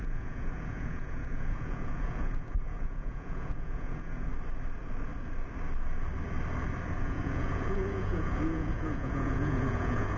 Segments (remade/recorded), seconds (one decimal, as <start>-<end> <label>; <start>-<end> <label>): 0.0-4.3 remade; 4.3-7.0 recorded; 7.0-10.2 remade